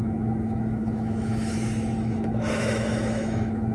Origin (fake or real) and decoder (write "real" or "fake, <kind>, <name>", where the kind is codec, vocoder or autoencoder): fake, autoencoder, DAC-VAE